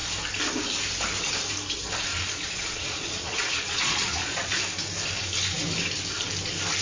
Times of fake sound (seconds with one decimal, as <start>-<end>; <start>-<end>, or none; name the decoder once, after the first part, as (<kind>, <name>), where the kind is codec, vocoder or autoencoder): 2.1-4.6 (vocoder, Vocos)